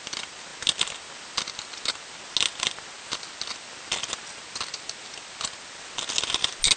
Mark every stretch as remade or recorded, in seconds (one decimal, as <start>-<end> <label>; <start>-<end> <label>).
0.0-6.8 recorded